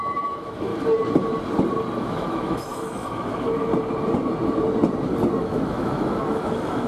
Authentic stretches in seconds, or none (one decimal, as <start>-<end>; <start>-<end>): 0.7-2.0; 3.7-5.4